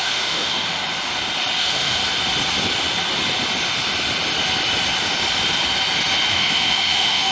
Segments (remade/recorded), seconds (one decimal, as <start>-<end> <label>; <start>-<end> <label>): 0.0-0.8 remade; 0.8-1.6 recorded; 1.6-2.0 remade; 2.0-6.3 recorded; 6.3-7.3 remade